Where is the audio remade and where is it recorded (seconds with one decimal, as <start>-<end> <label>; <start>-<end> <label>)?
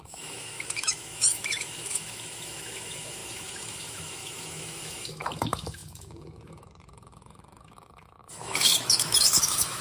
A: 0.0-9.8 remade